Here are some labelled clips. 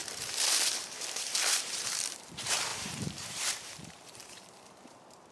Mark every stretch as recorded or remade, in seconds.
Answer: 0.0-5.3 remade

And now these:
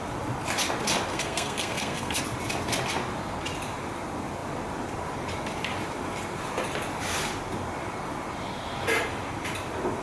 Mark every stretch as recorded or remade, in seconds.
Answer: 0.0-1.1 recorded; 1.1-2.2 remade; 2.2-10.0 recorded

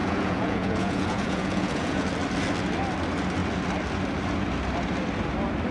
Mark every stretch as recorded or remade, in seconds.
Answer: 0.0-2.1 remade; 2.1-5.7 recorded